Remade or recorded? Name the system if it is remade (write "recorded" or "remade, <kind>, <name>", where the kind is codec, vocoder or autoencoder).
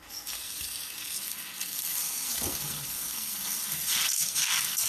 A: remade, codec, SNAC